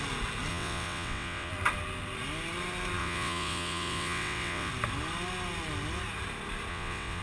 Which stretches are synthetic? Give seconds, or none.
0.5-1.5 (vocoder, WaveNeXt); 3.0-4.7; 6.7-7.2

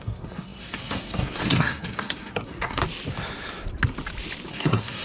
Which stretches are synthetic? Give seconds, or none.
0.0-2.8 (codec, SNAC); 4.5-5.0

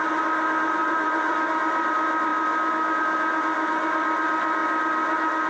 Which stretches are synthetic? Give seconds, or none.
0.8-1.9 (vocoder, BigVGAN v2)

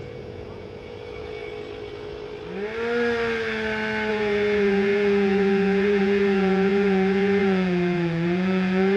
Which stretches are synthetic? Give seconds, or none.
0.0-1.4 (vocoder, Vocos); 4.1-9.0

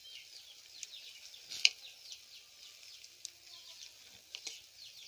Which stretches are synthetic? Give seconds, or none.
none

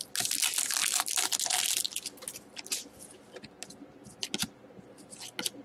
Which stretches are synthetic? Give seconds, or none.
none

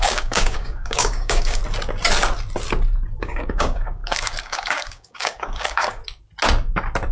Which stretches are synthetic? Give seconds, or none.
0.0-1.6 (codec, DAC); 3.2-6.0

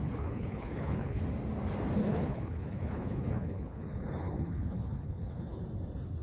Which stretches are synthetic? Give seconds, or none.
0.0-1.2 (codec, HILCodec); 2.0-5.6